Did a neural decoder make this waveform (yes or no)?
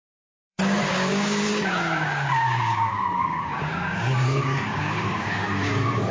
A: yes